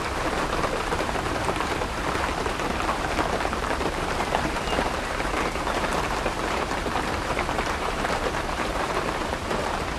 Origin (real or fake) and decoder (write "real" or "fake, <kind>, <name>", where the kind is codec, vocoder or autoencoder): fake, vocoder, BigVGAN v2